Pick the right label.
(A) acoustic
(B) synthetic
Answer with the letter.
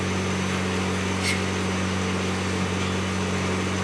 A